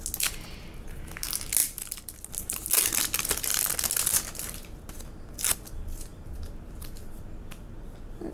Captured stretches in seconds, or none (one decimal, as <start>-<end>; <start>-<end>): 0.0-8.3